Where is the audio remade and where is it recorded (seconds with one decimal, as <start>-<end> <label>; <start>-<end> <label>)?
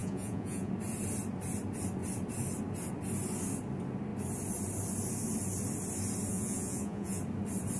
0.0-0.7 remade; 0.7-6.3 recorded; 6.3-7.2 remade; 7.2-7.8 recorded